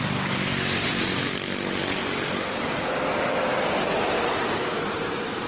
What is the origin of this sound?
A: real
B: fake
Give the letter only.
B